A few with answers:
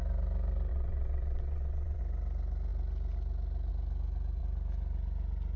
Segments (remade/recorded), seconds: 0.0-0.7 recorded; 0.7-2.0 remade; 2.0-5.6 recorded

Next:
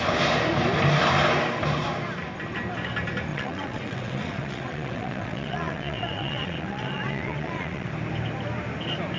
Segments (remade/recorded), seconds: 0.0-3.3 recorded; 3.3-7.9 remade; 7.9-9.2 recorded